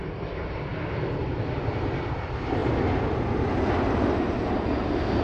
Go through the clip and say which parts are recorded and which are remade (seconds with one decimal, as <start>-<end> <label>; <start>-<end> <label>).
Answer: 0.0-5.2 recorded